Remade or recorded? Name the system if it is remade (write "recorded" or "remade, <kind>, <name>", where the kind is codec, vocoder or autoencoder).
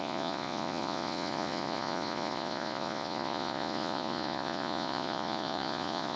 remade, vocoder, Vocos